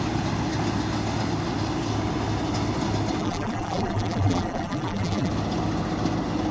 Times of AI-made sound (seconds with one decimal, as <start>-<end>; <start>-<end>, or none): 3.2-5.3